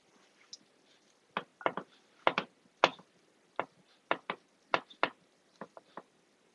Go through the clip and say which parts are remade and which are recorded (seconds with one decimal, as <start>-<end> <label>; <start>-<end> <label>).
0.0-6.5 recorded